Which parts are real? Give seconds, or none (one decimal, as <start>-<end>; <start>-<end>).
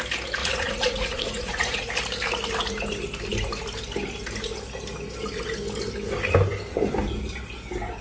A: 0.0-0.4; 1.9-8.0